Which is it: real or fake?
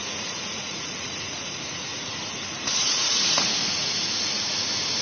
fake